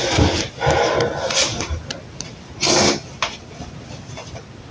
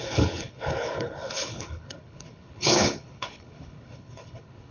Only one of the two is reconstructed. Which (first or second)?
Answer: second